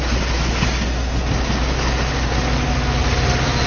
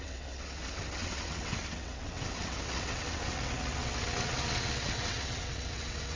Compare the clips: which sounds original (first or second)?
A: first